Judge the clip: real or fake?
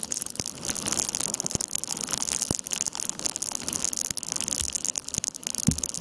real